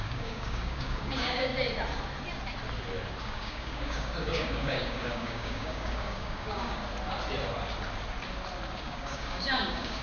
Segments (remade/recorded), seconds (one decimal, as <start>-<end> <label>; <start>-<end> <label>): 0.0-1.5 remade; 1.5-3.2 recorded; 3.2-6.8 remade; 6.8-8.8 recorded; 8.8-10.0 remade